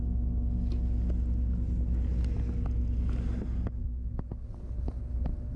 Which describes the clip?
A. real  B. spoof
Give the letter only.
A